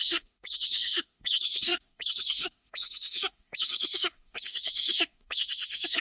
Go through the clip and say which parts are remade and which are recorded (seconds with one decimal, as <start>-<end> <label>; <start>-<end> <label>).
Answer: 0.0-6.0 remade